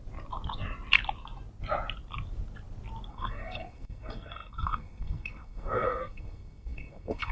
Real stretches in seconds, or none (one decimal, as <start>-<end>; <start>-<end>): 0.0-3.1

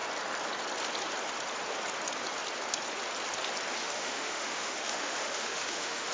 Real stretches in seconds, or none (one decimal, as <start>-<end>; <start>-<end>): 0.0-3.8